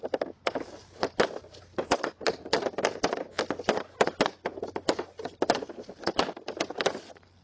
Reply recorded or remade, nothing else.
recorded